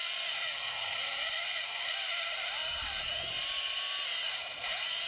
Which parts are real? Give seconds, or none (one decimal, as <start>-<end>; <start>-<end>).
0.0-0.7; 1.4-4.3